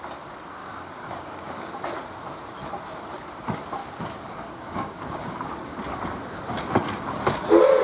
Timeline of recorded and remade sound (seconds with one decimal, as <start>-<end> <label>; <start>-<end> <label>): 0.0-0.6 recorded; 0.6-1.7 remade; 1.7-3.8 recorded; 3.8-5.3 remade; 5.3-7.8 recorded